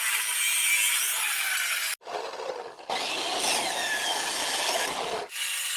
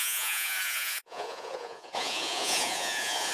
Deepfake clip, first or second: second